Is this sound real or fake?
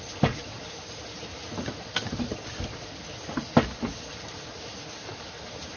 real